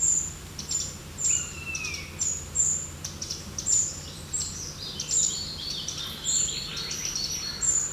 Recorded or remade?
remade